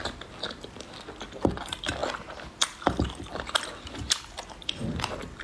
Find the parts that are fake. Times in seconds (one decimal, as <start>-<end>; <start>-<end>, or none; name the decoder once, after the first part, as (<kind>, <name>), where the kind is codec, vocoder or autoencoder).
2.0-5.4 (vocoder, BigVGAN v2)